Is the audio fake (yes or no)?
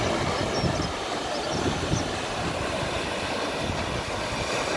no